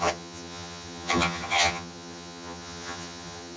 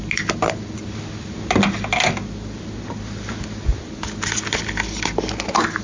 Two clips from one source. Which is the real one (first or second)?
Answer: second